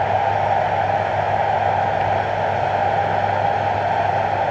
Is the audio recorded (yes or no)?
yes